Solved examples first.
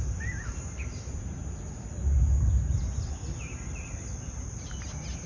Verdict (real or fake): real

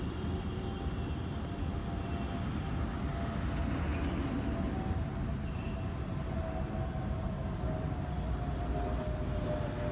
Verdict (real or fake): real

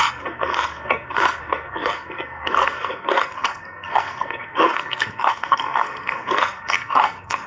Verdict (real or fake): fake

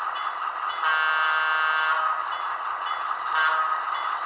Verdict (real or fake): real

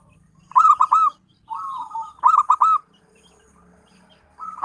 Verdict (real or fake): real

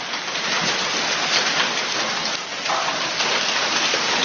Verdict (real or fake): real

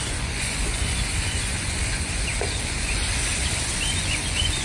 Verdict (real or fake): fake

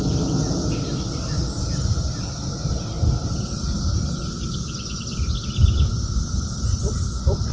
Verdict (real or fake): real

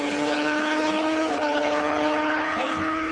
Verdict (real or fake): fake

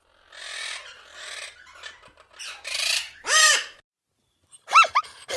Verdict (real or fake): real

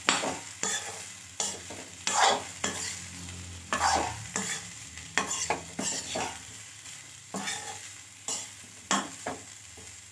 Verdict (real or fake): real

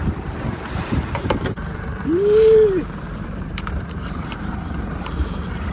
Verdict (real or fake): fake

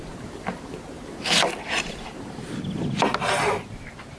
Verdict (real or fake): real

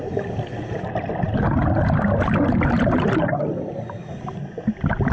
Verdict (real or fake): real